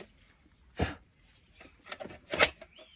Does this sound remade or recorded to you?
recorded